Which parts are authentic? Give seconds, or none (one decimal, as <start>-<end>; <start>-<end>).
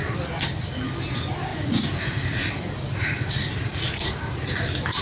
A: 0.0-5.0